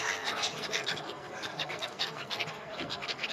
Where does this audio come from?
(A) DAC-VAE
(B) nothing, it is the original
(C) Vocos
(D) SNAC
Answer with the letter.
D